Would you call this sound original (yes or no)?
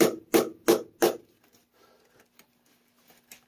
yes